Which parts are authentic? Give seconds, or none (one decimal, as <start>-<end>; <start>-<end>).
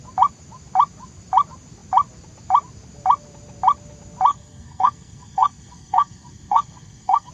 0.0-4.3